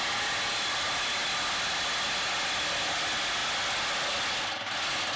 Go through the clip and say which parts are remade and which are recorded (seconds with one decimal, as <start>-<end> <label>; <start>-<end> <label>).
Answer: 0.0-5.2 recorded

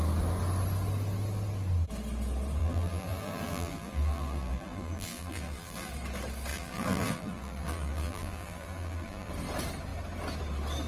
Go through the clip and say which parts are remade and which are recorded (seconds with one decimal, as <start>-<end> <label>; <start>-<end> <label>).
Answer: 0.0-2.6 recorded; 2.6-5.9 remade; 5.9-6.5 recorded; 6.5-9.3 remade; 9.3-10.9 recorded

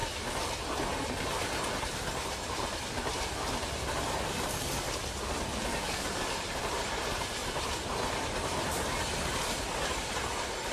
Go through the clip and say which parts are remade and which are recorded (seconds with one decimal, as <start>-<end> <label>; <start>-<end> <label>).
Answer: 0.0-5.3 recorded; 5.3-7.4 remade; 7.4-8.2 recorded; 8.2-10.7 remade

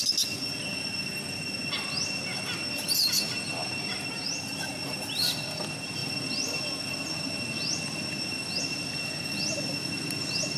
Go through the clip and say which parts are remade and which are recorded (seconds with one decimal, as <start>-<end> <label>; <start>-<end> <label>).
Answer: 0.0-10.6 recorded

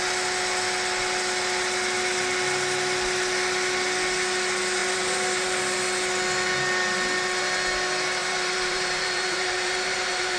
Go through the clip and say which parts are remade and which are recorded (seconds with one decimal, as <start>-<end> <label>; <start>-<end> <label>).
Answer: 0.0-4.8 recorded; 4.8-5.6 remade; 5.6-8.2 recorded; 8.2-10.4 remade